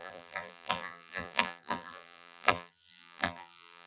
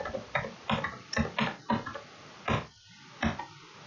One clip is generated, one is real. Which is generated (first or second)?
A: first